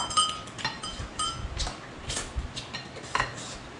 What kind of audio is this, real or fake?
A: real